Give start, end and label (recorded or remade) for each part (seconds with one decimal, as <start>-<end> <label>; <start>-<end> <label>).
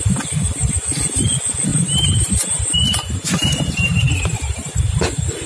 0.0-1.7 recorded; 1.7-5.0 remade; 5.0-5.5 recorded